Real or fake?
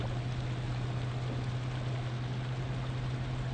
real